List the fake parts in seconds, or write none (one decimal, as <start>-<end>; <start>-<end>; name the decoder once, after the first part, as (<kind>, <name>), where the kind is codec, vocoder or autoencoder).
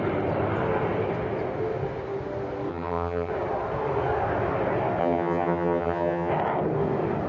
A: 2.7-3.3 (vocoder, HiFi-GAN); 5.0-6.3